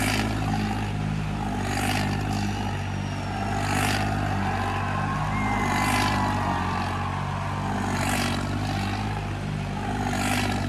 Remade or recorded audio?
recorded